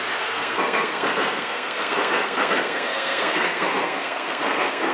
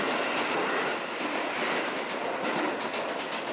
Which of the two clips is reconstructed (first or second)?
first